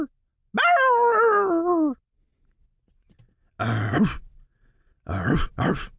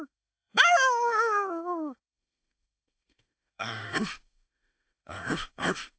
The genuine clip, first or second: first